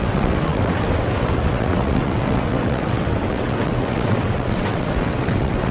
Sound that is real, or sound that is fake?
fake